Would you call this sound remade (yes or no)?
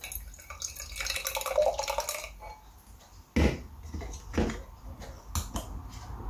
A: no